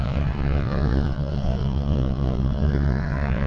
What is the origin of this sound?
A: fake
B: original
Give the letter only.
A